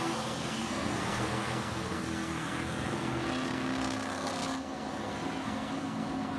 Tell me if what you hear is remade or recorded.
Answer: remade